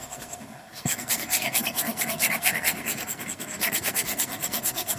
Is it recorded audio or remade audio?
remade